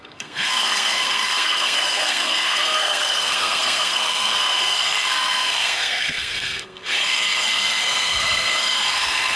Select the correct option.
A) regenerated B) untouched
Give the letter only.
A